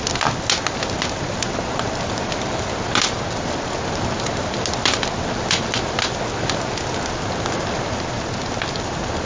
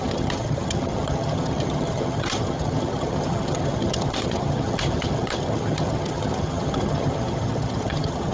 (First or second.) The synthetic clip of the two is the second